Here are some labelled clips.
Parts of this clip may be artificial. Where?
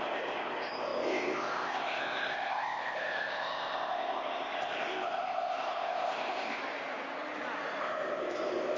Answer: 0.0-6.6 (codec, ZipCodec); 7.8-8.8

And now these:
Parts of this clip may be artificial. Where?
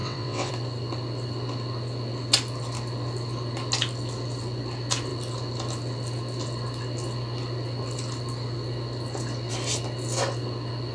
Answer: 0.0-0.5 (vocoder, WaveNeXt)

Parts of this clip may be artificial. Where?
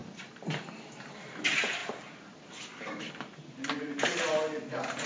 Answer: none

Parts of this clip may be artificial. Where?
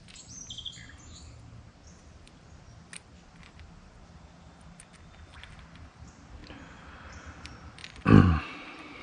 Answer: none